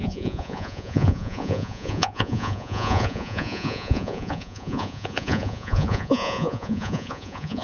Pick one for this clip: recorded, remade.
remade